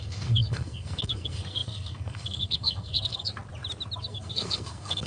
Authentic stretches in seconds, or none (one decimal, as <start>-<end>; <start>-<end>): 3.3-4.0